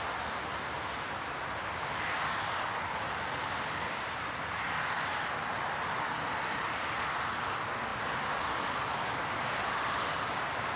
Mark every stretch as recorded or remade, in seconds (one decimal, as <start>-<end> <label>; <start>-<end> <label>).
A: 0.0-10.8 recorded